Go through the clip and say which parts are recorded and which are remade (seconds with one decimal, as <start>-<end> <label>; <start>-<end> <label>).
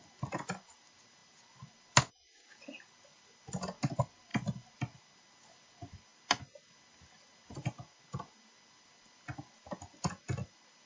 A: 0.0-10.9 recorded